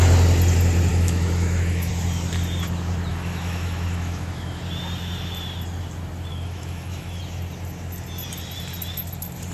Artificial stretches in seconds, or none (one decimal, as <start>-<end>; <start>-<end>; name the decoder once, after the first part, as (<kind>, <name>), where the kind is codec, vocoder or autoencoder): 0.9-1.9 (autoencoder, DAC-VAE); 3.1-4.6; 6.3-7.2